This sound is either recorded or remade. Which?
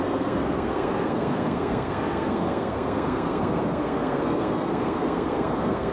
remade